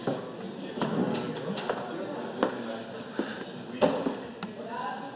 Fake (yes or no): no